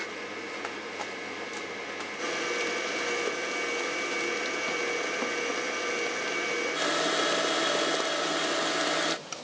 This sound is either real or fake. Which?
real